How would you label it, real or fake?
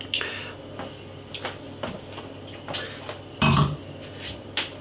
real